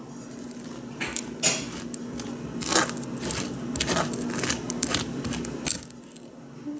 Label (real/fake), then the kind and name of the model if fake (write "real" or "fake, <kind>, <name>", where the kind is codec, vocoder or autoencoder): real